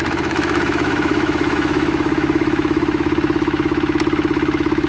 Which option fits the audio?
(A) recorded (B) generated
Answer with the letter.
B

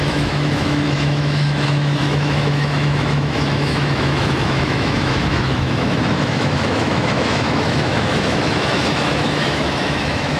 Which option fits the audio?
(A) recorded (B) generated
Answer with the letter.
B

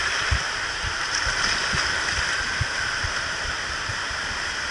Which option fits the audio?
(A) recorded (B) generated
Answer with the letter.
A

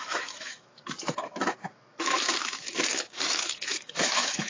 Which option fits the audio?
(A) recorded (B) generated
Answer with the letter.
B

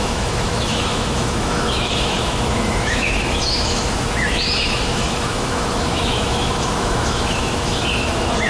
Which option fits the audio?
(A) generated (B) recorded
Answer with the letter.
A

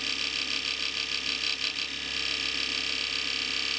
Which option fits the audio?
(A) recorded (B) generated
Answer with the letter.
A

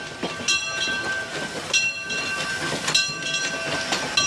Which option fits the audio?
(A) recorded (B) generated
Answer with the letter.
A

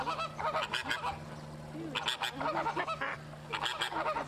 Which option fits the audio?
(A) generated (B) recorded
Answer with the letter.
B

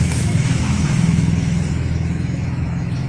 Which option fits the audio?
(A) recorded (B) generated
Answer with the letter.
B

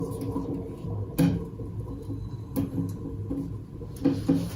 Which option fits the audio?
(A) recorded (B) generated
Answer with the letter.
A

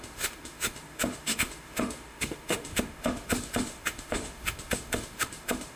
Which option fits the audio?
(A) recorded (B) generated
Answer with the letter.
B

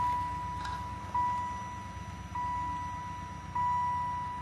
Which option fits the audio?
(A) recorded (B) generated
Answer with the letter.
A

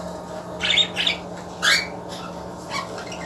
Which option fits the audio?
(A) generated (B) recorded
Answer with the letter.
B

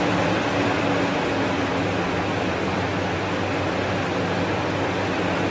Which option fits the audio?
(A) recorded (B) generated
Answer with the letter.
A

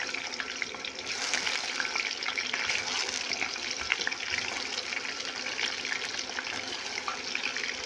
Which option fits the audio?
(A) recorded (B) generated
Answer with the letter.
A